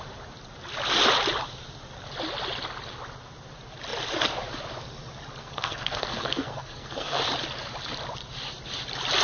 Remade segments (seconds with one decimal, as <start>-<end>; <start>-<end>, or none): 5.4-7.2